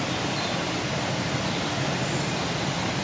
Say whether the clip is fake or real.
real